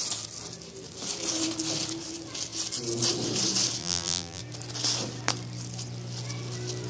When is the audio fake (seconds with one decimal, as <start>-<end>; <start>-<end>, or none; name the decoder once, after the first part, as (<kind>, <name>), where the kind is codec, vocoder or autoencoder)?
3.8-4.4 (vocoder, BigVGAN v2)